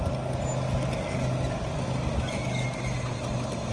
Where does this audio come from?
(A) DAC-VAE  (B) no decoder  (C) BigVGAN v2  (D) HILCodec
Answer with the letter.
B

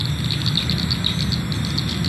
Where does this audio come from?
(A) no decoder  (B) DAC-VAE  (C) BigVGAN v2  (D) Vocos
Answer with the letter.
A